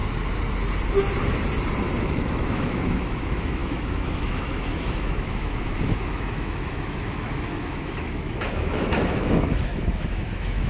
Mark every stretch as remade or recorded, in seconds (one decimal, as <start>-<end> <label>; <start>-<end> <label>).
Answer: 0.0-2.0 recorded; 2.0-10.7 remade